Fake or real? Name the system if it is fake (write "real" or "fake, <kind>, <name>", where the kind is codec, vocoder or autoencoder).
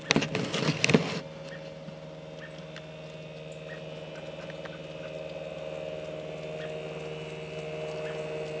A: real